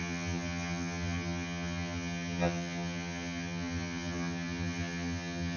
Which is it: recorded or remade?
remade